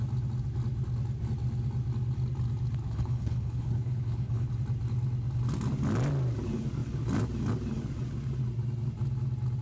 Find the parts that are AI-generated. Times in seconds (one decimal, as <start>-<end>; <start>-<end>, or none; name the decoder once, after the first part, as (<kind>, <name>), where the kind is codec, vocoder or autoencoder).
2.8-4.5 (codec, HILCodec)